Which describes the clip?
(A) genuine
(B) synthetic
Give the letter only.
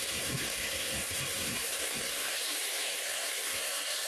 B